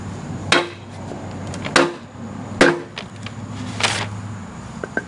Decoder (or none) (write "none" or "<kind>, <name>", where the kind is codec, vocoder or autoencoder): none